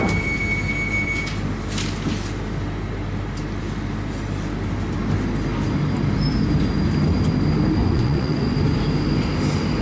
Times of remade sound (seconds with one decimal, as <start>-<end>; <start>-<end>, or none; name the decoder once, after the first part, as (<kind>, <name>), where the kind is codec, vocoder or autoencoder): 7.8-8.5 (vocoder, Vocos)